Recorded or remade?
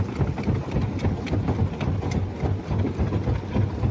recorded